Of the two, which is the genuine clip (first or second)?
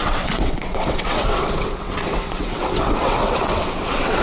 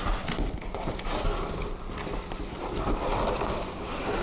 second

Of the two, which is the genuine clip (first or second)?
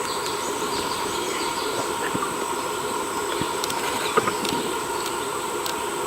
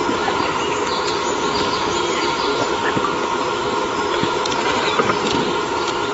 second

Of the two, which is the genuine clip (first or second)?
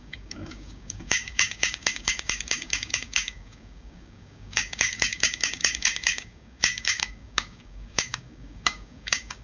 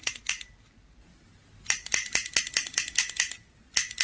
second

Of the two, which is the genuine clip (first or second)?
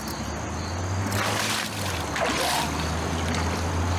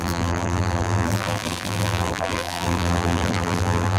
first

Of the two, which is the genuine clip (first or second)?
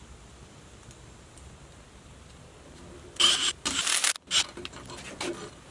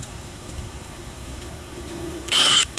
first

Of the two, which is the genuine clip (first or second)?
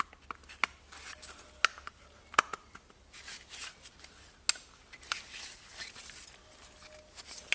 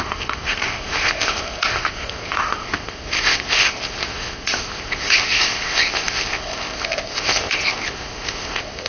first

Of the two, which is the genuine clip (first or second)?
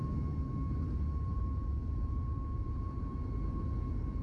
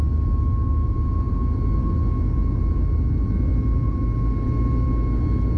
second